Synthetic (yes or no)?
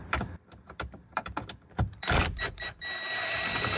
yes